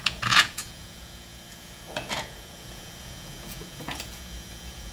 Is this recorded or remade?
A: remade